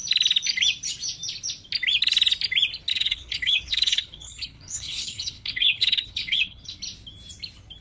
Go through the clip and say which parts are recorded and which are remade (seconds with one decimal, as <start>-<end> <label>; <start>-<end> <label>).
0.0-2.9 recorded; 2.9-6.8 remade; 6.8-7.8 recorded

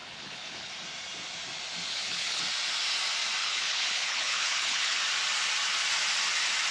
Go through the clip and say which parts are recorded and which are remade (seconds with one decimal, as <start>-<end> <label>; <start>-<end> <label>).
0.0-0.7 remade; 0.7-1.9 recorded; 1.9-2.4 remade; 2.4-3.4 recorded; 3.4-5.0 remade; 5.0-6.7 recorded

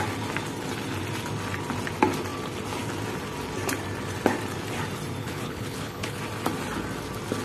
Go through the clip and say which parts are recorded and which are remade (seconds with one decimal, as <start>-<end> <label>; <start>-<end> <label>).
0.0-5.2 recorded; 5.2-6.2 remade; 6.2-7.4 recorded

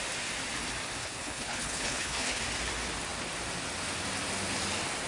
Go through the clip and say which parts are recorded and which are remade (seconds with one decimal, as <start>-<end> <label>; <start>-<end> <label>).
0.0-1.0 recorded; 1.0-2.4 remade; 2.4-5.1 recorded

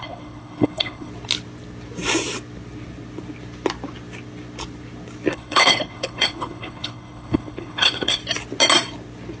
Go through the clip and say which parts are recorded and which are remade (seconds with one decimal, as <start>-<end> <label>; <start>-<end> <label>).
0.0-1.1 remade; 1.1-5.3 recorded; 5.3-8.2 remade; 8.2-9.4 recorded

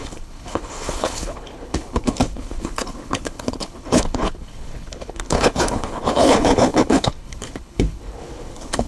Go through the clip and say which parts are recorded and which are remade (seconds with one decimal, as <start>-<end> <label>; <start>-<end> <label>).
0.0-8.9 remade

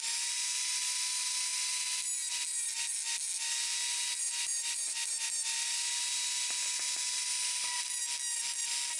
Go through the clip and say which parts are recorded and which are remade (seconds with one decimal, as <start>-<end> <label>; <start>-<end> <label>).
0.0-9.0 recorded